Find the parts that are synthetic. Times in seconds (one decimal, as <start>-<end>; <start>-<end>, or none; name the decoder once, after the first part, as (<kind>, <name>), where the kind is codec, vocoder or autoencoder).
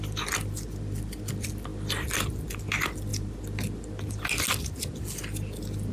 none